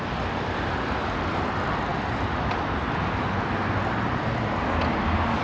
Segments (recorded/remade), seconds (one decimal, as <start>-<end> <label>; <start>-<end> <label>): 0.0-5.4 recorded